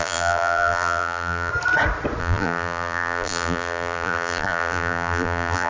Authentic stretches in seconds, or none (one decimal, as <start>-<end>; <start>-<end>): 1.5-2.2

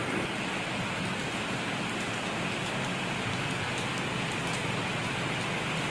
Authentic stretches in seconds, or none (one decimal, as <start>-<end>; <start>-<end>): 0.0-5.9

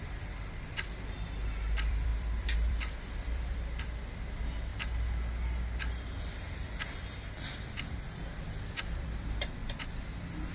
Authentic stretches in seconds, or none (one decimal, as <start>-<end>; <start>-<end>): 4.7-7.7

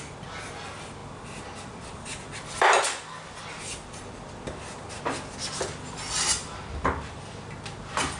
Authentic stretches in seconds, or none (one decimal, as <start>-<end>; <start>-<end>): 0.0-1.0; 5.0-6.3; 7.2-8.2

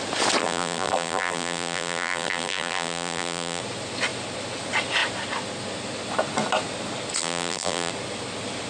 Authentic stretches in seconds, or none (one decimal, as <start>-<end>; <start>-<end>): 0.0-0.4; 3.6-7.2; 7.9-8.7

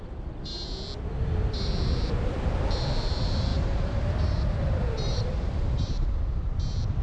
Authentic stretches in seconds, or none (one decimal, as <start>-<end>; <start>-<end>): 0.5-1.4